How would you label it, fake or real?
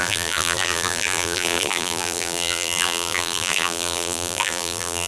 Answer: fake